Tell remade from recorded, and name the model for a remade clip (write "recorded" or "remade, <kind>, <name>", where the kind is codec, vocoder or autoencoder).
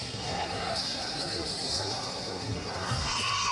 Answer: remade, codec, SNAC